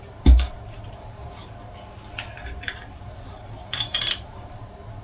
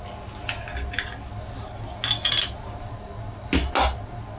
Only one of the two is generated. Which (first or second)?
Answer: first